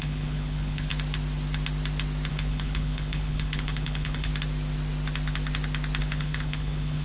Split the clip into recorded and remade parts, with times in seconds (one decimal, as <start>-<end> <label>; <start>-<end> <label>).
0.0-0.9 remade; 0.9-2.3 recorded; 2.3-4.3 remade; 4.3-6.0 recorded; 6.0-7.0 remade